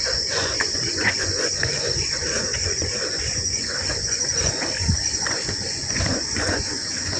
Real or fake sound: fake